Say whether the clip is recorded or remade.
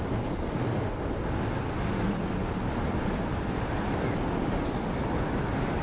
recorded